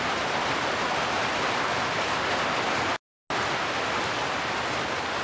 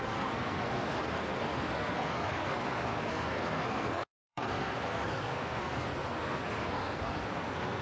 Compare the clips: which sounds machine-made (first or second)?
second